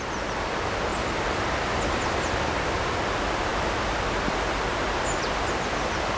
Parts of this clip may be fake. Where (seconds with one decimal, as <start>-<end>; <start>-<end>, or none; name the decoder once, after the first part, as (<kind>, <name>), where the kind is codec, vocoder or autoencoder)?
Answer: none